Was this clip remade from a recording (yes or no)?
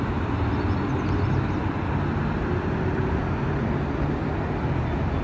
no